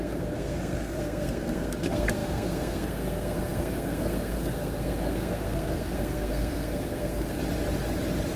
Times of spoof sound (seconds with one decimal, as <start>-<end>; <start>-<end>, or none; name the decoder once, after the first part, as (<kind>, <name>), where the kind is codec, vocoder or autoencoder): 0.0-7.4 (codec, SNAC)